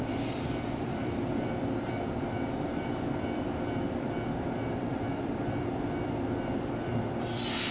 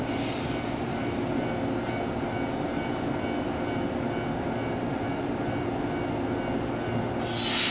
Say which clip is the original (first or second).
second